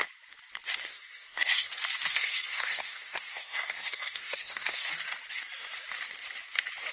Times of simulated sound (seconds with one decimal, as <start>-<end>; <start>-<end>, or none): 0.9-1.7; 2.1-4.9